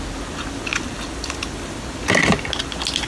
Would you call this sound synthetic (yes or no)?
no